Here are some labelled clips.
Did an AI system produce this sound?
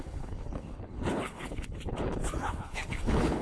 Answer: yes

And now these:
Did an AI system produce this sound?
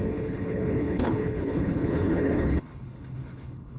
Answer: yes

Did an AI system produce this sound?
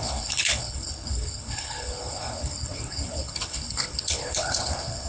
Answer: yes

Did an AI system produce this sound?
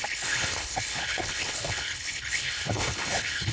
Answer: yes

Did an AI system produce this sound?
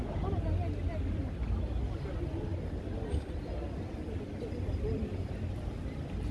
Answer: no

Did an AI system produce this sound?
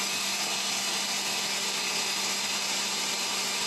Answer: no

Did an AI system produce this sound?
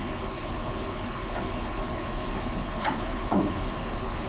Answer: yes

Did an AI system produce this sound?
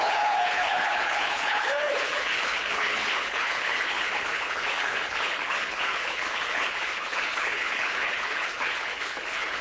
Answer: yes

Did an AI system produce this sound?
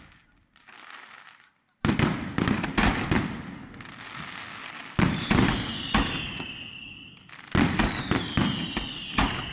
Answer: no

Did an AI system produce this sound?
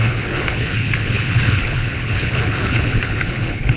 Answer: yes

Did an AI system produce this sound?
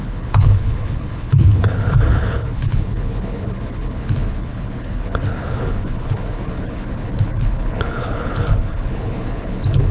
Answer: yes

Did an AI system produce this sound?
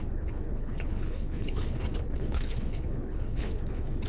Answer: yes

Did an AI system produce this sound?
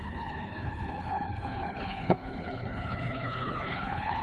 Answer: yes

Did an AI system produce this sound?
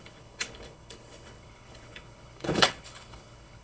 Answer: yes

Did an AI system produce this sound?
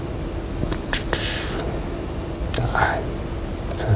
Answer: no